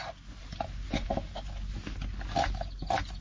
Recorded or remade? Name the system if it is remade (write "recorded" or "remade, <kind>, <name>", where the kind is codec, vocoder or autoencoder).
recorded